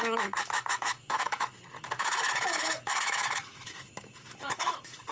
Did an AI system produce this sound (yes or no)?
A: yes